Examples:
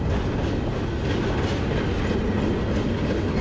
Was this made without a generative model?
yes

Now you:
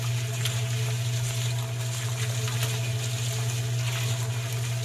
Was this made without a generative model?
yes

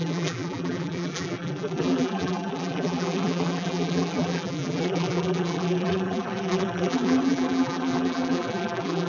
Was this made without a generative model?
no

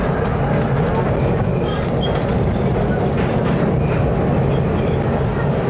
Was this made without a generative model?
yes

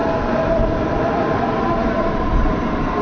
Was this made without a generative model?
yes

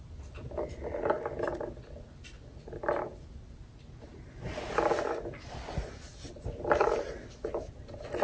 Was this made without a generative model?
yes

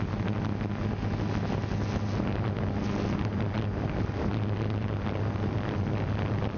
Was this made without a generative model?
yes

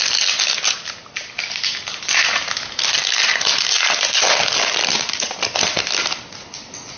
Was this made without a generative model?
yes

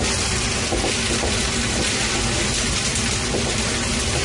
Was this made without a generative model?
yes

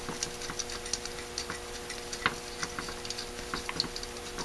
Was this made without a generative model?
yes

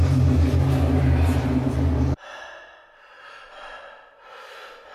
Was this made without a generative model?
no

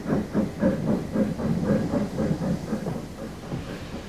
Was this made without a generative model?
yes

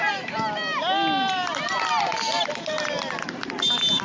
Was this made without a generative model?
yes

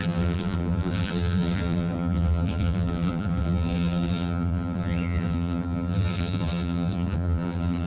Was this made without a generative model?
no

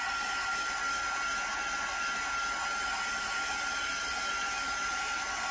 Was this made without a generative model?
yes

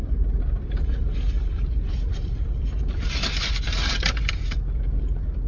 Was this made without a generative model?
no